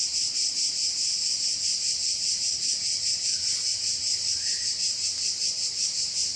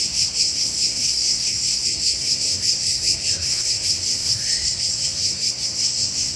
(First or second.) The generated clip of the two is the second